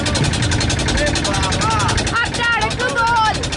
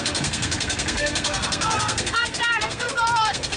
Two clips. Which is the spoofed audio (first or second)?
second